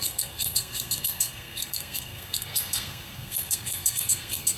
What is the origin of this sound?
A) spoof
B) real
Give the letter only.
A